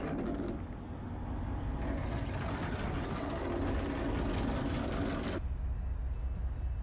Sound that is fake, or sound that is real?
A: real